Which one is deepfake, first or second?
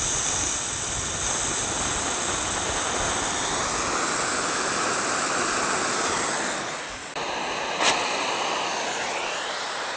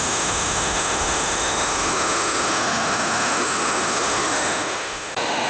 second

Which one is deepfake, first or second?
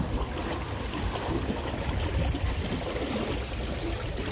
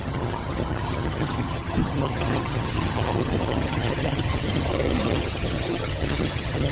second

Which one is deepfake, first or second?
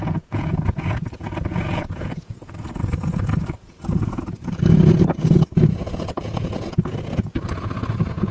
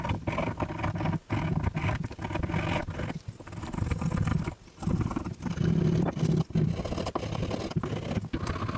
first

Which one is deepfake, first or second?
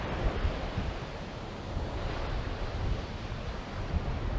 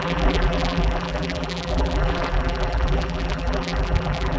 second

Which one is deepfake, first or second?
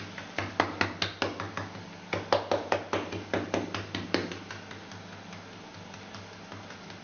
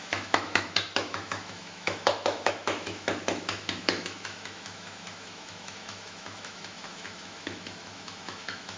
second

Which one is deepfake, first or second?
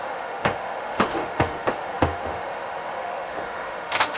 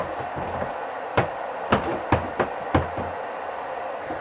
first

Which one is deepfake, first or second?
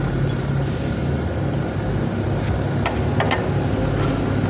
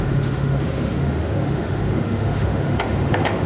second